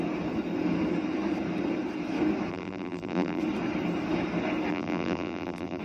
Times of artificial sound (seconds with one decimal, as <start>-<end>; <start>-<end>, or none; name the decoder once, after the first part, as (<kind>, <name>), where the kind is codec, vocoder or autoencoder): 2.5-3.4 (vocoder, BigVGAN v2); 4.7-5.8